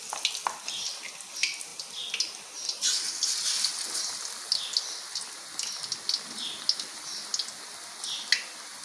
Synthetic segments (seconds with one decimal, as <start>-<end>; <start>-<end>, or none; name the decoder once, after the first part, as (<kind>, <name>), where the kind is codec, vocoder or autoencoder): none